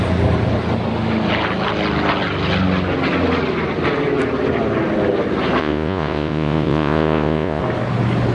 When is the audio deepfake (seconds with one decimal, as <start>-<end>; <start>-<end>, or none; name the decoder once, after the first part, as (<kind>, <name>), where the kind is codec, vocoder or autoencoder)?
5.6-7.6 (vocoder, Vocos)